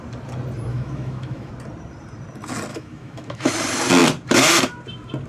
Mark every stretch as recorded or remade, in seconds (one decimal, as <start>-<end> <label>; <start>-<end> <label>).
0.0-0.7 recorded; 0.7-1.5 remade; 1.5-2.7 recorded; 2.7-3.5 remade; 3.5-5.3 recorded